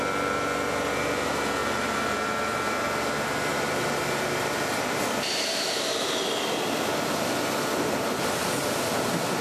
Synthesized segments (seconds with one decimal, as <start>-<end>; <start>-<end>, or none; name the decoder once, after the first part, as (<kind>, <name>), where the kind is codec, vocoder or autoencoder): 1.6-3.1 (vocoder, BigVGAN v2); 3.5-7.7

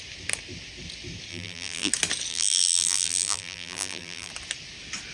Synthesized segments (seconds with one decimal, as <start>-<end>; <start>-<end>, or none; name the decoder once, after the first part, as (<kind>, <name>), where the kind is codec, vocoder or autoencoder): 1.3-1.9 (vocoder, BigVGAN v2); 2.3-4.3

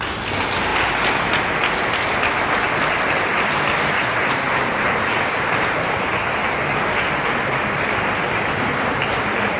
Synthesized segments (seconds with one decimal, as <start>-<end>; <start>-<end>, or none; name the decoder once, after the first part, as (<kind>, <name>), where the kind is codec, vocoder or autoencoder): 4.0-6.1 (vocoder, BigVGAN v2)

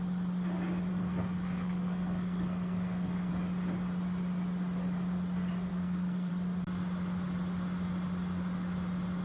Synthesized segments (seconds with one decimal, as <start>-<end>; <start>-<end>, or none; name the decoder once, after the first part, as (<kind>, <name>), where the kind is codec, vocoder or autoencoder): 0.9-3.3 (codec, SNAC); 5.7-6.3

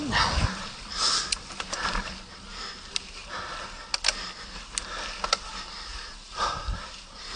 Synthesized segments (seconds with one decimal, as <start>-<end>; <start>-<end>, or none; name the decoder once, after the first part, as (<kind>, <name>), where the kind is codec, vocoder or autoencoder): 5.9-7.4 (vocoder, BigVGAN v2)

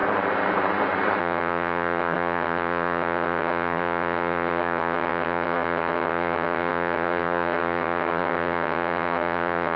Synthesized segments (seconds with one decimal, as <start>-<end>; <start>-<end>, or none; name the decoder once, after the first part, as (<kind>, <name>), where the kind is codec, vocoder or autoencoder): 1.2-9.8 (vocoder, HiFi-GAN)